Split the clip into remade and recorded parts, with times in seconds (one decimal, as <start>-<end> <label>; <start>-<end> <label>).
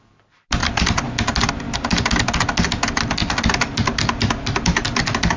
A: 0.0-5.4 recorded